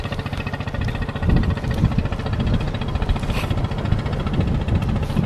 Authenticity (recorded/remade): recorded